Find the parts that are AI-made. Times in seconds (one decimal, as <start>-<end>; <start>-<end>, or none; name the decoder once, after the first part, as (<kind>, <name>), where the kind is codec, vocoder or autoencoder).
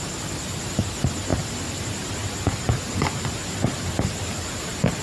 none